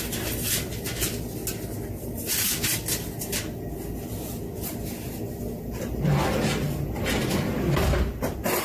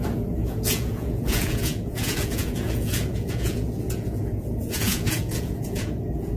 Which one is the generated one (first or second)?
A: second